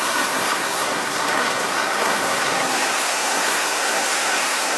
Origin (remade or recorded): remade